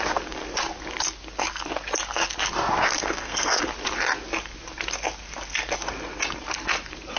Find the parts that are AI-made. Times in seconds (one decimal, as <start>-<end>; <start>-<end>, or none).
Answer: 3.0-3.6